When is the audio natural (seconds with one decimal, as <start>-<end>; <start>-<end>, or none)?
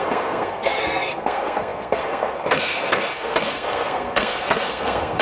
none